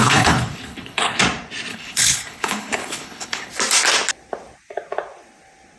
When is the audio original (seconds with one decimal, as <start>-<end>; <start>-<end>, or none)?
1.2-1.7; 3.5-5.8